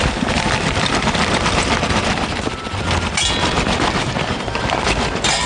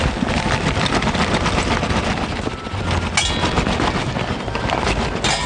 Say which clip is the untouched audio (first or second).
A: second